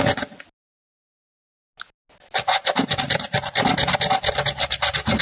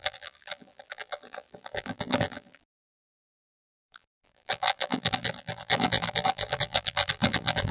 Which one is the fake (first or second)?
second